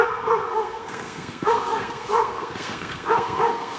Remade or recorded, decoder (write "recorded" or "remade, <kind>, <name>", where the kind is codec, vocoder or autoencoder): remade, codec, SNAC